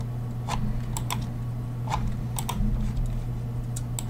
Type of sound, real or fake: real